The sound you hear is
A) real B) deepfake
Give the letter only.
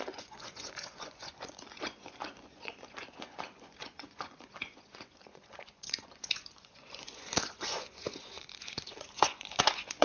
B